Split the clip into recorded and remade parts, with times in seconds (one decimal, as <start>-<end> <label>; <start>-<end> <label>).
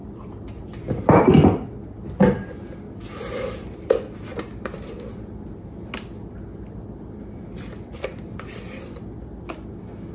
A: 0.0-10.1 recorded